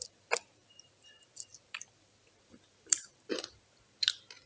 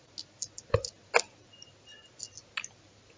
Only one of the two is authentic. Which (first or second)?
second